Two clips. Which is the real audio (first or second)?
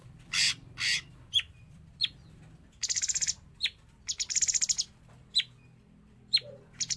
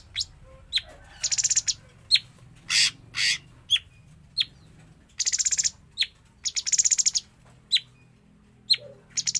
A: second